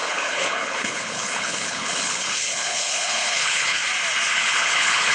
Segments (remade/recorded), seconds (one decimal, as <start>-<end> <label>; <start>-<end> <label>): 0.0-3.8 remade; 3.8-4.3 recorded; 4.3-5.1 remade